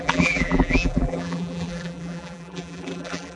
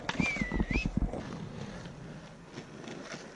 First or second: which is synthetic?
first